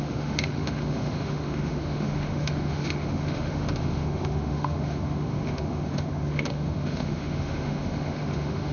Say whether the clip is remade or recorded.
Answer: remade